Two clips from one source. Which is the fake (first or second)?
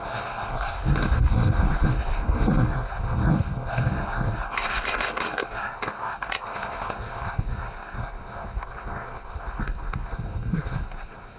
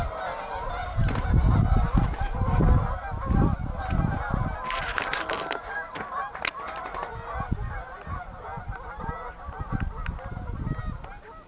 first